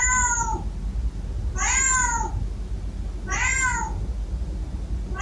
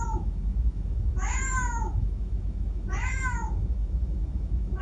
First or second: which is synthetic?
second